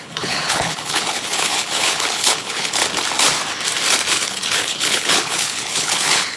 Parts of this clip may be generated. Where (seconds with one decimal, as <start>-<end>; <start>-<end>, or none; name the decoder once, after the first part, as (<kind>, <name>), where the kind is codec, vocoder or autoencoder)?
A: 0.0-2.8 (codec, HILCodec); 4.1-6.4